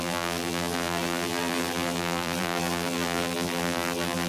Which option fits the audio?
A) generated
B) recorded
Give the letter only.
A